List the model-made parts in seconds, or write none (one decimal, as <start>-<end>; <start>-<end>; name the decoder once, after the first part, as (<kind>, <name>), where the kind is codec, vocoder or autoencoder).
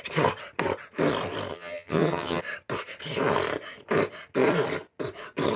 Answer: 1.5-2.4 (vocoder, HiFi-GAN)